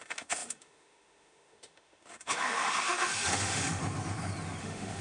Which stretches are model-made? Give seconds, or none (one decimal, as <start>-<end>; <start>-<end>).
0.0-3.8; 4.6-5.0